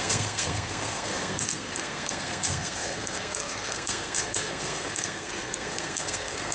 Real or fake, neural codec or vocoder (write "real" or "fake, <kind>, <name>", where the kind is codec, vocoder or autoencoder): fake, codec, SNAC